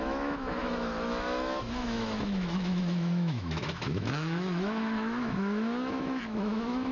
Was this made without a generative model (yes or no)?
no